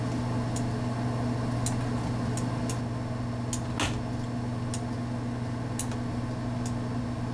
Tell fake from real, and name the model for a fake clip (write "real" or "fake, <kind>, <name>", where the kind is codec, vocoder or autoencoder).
real